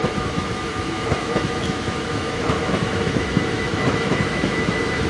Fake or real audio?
fake